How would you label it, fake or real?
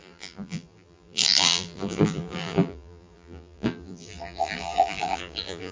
fake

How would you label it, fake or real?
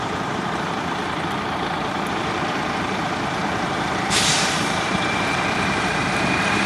fake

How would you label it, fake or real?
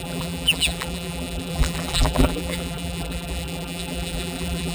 fake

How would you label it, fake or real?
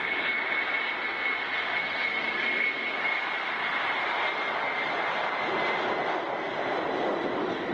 real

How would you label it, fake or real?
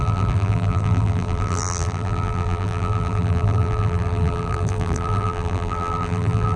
fake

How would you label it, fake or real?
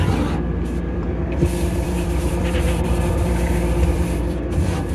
fake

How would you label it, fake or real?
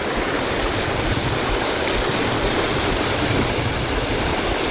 fake